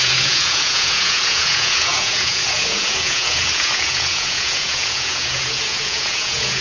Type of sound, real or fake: fake